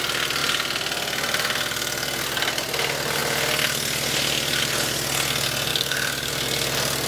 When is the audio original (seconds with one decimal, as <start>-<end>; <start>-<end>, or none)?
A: 0.0-5.7; 6.3-7.1